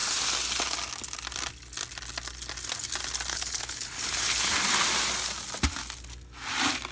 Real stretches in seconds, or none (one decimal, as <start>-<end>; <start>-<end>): 0.0-3.3; 4.5-6.9